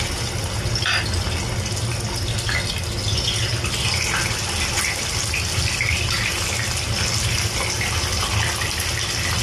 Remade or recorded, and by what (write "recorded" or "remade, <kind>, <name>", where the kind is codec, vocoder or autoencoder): recorded